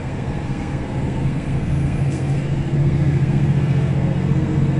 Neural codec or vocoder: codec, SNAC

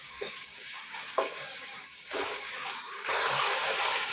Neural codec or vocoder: codec, DAC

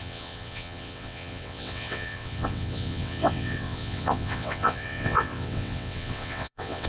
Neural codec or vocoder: vocoder, WaveNeXt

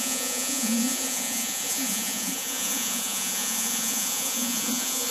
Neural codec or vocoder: vocoder, Vocos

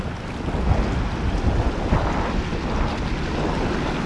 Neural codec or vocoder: none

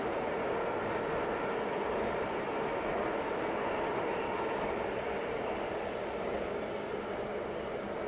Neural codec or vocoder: none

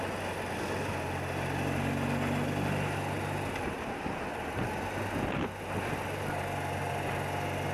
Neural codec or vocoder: none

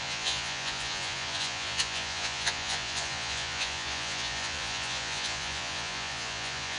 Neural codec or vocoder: vocoder, Vocos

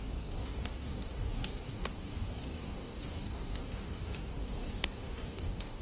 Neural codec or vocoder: codec, DAC